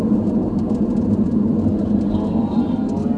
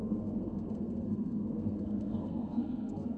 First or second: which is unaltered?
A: first